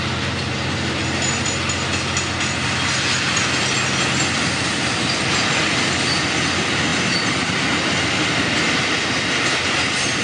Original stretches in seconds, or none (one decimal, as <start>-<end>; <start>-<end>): 0.0-10.2